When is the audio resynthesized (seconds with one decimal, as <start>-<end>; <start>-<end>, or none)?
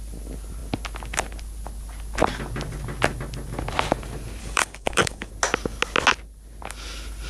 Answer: 4.4-5.3